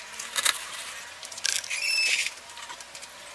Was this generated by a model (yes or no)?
no